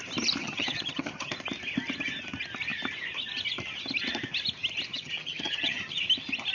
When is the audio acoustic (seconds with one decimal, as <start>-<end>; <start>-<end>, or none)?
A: 0.0-0.4; 1.3-4.9; 6.0-6.5